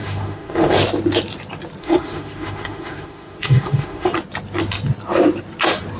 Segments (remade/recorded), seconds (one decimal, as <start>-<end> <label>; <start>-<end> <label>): 0.0-0.8 remade; 0.8-1.8 recorded; 1.8-4.1 remade; 4.1-6.0 recorded

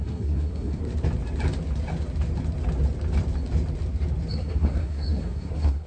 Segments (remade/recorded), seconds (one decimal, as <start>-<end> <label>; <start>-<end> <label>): 0.0-0.8 remade; 0.8-4.3 recorded; 4.3-5.9 remade

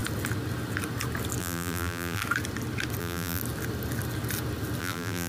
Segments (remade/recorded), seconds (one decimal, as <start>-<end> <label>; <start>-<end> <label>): 0.0-1.4 recorded; 1.4-2.2 remade; 2.2-3.0 recorded; 3.0-3.4 remade; 3.4-4.8 recorded; 4.8-5.3 remade

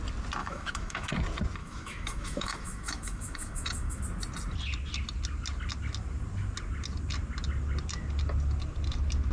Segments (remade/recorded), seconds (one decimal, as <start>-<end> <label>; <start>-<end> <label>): 0.0-0.4 recorded; 0.4-1.1 remade; 1.1-1.6 recorded; 1.6-4.0 remade; 4.0-9.3 recorded